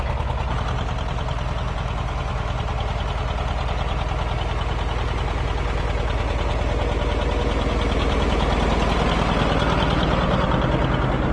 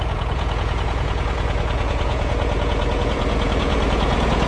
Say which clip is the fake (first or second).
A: second